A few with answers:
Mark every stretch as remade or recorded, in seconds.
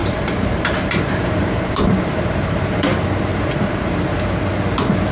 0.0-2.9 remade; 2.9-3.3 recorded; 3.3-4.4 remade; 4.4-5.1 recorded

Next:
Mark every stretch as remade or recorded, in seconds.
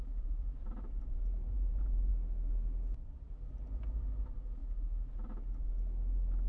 0.0-2.1 remade; 2.1-3.5 recorded; 3.5-4.6 remade; 4.6-6.5 recorded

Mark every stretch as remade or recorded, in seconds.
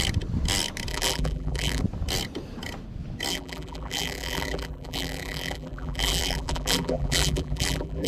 0.0-0.9 recorded; 0.9-1.8 remade; 1.8-3.3 recorded; 3.3-8.1 remade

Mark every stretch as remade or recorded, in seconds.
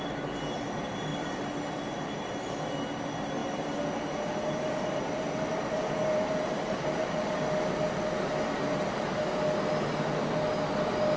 0.0-1.1 recorded; 1.1-2.3 remade; 2.3-3.4 recorded; 3.4-7.3 remade; 7.3-11.2 recorded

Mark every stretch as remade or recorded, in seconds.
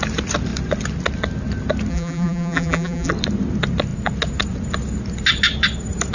0.0-1.9 recorded; 1.9-3.1 remade; 3.1-6.1 recorded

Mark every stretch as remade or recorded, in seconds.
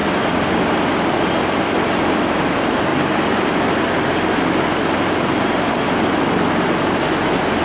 0.0-1.4 recorded; 1.4-2.9 remade; 2.9-7.6 recorded